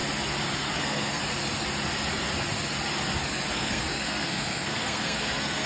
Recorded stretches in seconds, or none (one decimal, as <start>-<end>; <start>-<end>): 0.0-0.7; 1.2-3.5